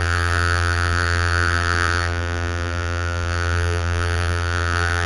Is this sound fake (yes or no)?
yes